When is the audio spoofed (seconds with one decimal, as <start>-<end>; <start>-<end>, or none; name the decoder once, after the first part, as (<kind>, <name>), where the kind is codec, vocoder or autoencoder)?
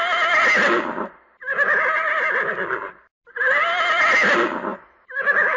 4.7-5.6 (autoencoder, DAC-VAE)